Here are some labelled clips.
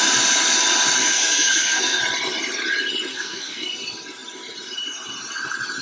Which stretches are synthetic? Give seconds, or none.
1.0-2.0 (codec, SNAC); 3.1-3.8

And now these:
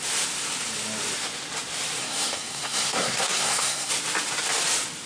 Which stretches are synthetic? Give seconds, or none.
2.0-3.9 (codec, SNAC)

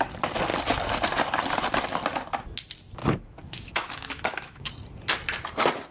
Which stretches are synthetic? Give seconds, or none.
3.0-4.7 (autoencoder, DAC-VAE)

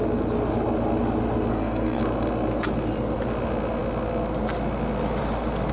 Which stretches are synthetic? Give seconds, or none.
1.5-2.0 (codec, SNAC)

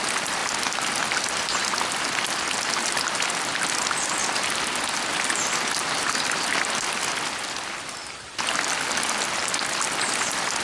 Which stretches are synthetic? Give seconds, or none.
none

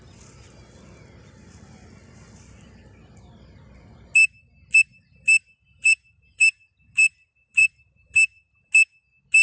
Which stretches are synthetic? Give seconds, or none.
4.9-8.7 (vocoder, BigVGAN v2)

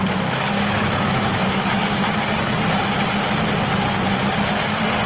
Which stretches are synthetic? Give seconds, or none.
0.5-2.0 (autoencoder, DAC-VAE)